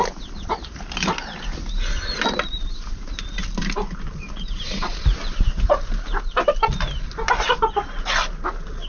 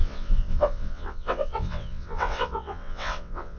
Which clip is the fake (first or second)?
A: second